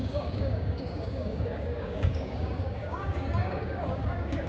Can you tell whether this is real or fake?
fake